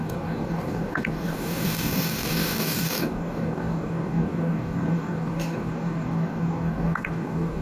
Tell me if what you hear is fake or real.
fake